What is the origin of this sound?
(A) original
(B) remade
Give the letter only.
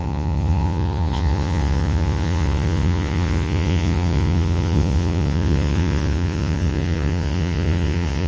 B